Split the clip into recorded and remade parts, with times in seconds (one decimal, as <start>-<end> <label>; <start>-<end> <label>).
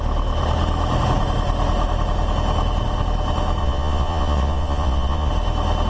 0.0-3.6 recorded; 3.6-5.3 remade; 5.3-5.9 recorded